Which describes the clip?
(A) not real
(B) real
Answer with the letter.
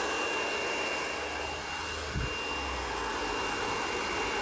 B